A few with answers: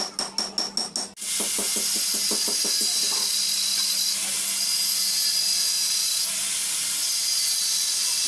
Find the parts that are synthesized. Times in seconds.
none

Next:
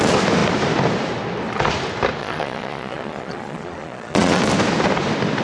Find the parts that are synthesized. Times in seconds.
2.2-4.4 (vocoder, Vocos)

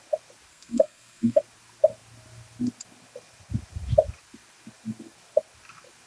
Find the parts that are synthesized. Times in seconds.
0.5-1.4 (codec, SNAC)

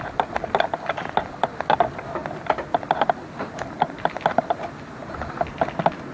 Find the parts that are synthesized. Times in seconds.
none

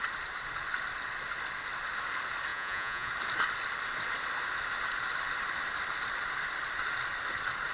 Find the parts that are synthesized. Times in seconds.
2.5-3.1 (vocoder, Vocos)

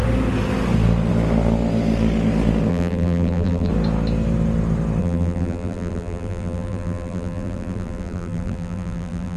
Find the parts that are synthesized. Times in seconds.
2.7-3.7 (vocoder, BigVGAN v2); 5.0-9.4

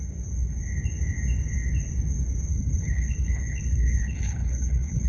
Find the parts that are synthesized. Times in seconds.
2.5-5.1 (codec, HILCodec)